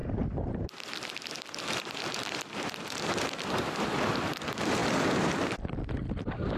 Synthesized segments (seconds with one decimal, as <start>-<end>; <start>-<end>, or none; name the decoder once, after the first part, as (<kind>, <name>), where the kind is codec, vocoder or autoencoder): 4.0-6.6 (vocoder, BigVGAN v2)